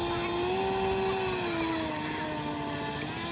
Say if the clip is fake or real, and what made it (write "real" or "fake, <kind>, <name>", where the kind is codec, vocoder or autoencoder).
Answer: real